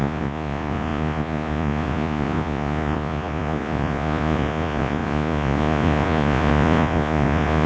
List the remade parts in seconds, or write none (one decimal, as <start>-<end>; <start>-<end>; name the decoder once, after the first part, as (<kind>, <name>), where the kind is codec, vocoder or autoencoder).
0.0-7.7 (vocoder, Vocos)